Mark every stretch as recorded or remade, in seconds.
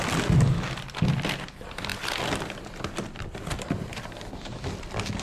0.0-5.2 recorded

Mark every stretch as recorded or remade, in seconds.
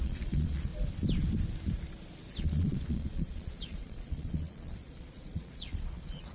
0.0-0.7 remade; 0.7-2.4 recorded; 2.4-6.3 remade